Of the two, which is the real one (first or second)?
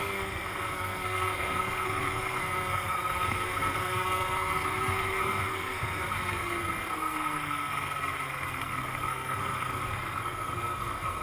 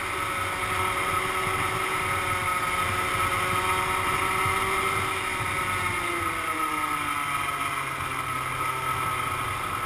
second